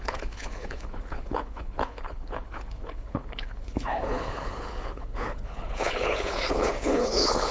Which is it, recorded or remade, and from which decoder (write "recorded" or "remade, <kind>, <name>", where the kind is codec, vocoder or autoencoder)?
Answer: remade, codec, HILCodec